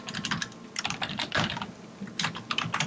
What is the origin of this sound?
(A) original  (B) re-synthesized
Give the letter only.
A